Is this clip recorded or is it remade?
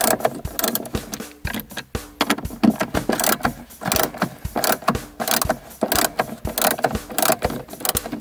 recorded